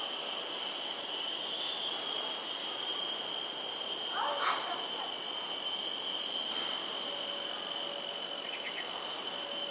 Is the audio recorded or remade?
recorded